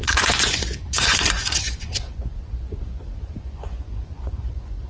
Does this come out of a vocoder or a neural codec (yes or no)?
yes